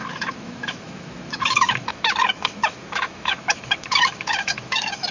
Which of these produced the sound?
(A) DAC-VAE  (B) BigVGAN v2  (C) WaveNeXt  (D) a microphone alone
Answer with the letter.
A